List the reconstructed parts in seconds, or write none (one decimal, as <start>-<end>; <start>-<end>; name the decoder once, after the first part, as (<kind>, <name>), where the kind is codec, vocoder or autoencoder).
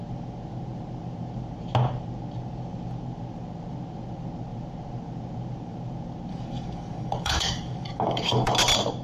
6.3-8.5 (codec, DAC)